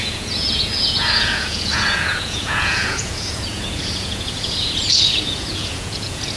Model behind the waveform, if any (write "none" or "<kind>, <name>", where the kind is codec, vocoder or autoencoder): vocoder, Vocos